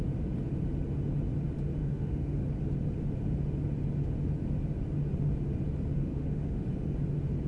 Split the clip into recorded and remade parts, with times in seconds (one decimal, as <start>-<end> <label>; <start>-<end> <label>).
0.0-1.8 recorded; 1.8-2.4 remade; 2.4-6.0 recorded; 6.0-6.7 remade; 6.7-7.5 recorded